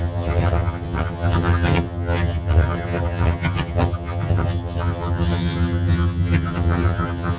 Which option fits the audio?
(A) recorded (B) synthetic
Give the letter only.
B